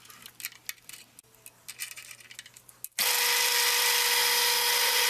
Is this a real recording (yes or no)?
yes